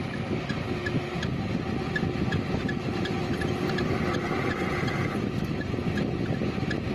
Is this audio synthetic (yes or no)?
no